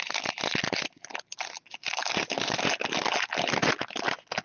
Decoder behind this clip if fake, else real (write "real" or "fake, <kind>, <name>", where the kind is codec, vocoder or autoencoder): real